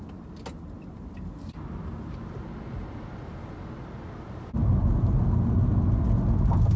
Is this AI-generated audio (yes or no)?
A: no